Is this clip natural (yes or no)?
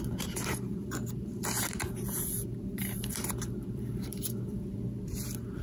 no